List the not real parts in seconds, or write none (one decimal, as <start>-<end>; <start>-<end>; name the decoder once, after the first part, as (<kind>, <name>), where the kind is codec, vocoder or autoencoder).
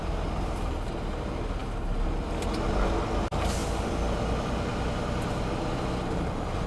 0.0-1.0 (vocoder, BigVGAN v2)